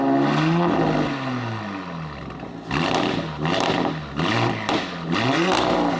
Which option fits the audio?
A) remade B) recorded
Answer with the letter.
B